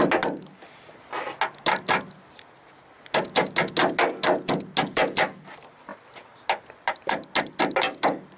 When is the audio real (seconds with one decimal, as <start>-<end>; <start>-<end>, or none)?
0.0-8.4